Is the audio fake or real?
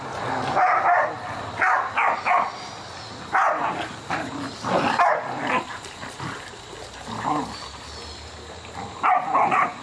real